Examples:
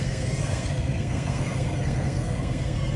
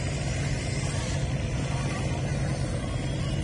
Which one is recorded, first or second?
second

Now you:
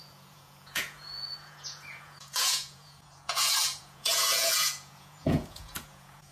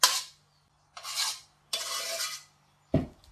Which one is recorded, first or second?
second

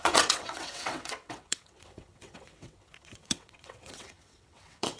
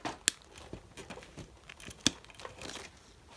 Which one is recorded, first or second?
second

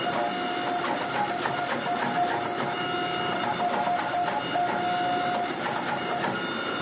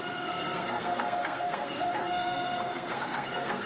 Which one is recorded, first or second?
first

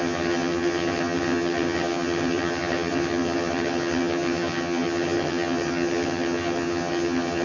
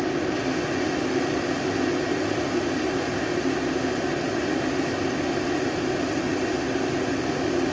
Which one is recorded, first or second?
second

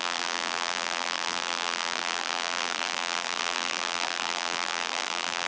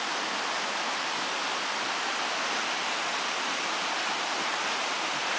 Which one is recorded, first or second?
second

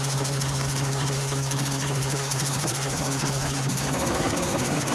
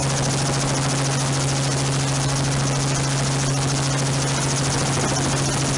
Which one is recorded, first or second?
second